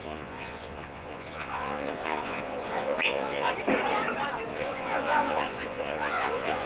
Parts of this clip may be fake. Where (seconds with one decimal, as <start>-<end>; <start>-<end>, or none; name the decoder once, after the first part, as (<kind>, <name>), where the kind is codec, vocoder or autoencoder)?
0.0-3.5 (vocoder, Vocos); 4.5-6.7